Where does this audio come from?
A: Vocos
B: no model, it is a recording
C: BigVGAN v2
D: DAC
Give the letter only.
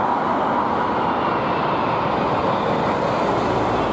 B